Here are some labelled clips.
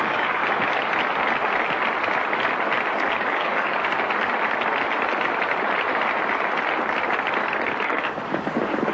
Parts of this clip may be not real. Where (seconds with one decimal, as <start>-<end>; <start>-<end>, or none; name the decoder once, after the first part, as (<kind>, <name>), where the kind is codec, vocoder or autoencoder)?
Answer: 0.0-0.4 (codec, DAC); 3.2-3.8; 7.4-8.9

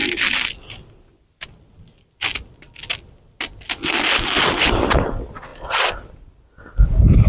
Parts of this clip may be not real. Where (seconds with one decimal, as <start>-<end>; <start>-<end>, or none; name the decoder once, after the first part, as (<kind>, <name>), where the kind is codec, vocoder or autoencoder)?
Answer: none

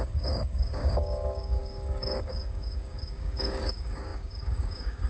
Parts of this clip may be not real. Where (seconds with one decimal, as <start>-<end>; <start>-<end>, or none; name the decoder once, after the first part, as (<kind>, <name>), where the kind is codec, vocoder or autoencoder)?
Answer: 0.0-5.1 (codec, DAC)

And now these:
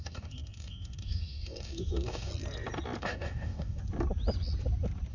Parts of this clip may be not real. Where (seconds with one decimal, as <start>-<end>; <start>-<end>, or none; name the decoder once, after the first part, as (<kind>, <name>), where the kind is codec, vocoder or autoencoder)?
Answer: 0.0-2.3 (codec, DAC); 3.0-3.8